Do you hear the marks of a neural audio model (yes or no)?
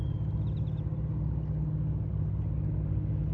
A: no